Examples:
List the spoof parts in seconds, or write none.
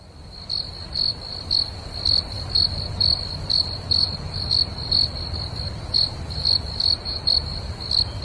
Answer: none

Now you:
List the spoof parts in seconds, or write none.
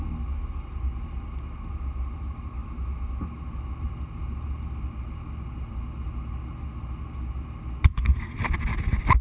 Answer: 7.9-8.4 (codec, SNAC)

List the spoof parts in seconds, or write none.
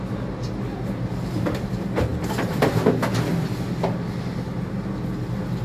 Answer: none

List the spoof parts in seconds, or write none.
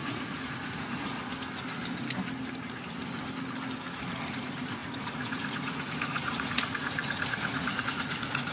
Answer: 0.0-1.2 (vocoder, Vocos); 4.3-8.5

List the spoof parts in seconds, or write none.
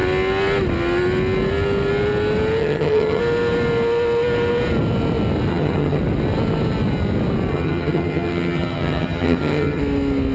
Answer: 2.6-3.2 (vocoder, HiFi-GAN); 5.5-6.0; 7.5-9.8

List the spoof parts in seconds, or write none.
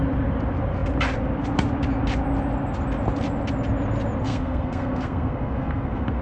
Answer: 4.2-6.2 (codec, SNAC)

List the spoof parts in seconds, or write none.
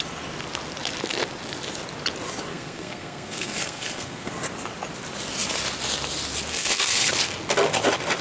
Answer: 2.5-4.3 (codec, SNAC); 6.5-7.1